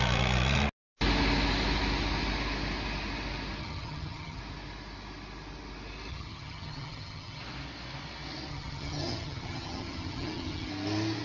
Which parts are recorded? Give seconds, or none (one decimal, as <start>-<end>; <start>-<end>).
0.0-3.6; 4.4-6.1; 7.4-8.5; 10.7-11.2